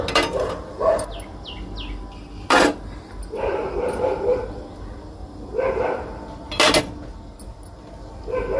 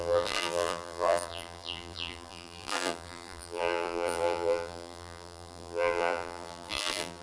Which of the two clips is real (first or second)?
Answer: first